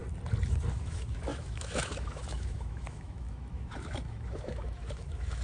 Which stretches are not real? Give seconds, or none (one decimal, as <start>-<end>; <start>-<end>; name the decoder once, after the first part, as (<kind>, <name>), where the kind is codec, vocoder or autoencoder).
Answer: 0.7-5.4 (autoencoder, DAC-VAE)